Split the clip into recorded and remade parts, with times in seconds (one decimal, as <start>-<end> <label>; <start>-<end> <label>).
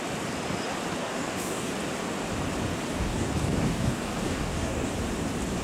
0.0-1.0 recorded; 1.0-1.7 remade; 1.7-2.9 recorded; 2.9-4.9 remade; 4.9-5.6 recorded